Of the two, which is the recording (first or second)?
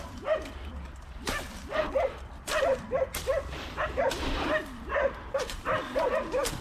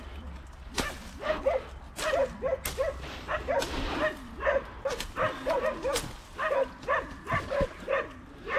second